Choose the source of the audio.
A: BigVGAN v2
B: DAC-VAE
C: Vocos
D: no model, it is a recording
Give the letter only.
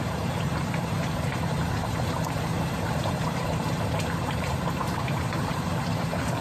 A